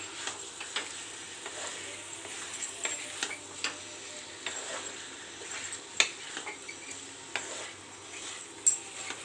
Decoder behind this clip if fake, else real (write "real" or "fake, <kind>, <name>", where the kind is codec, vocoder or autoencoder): real